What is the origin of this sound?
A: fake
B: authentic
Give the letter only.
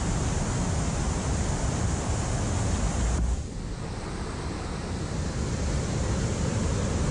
A